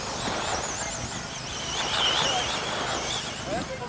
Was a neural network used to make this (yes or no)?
no